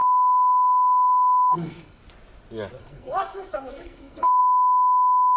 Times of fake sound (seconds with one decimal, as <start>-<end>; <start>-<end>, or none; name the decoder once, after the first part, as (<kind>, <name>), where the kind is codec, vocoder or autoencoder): 0.0-2.0 (codec, SNAC); 2.8-4.4